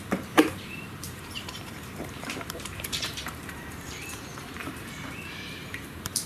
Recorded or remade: remade